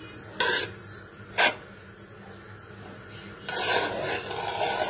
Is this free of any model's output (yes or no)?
yes